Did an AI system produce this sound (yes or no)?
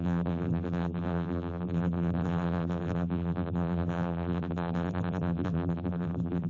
yes